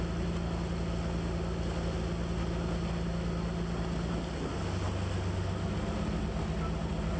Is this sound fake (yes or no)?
no